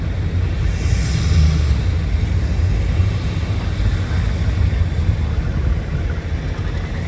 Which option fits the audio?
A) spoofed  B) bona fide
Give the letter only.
B